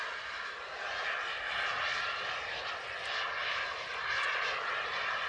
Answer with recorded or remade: recorded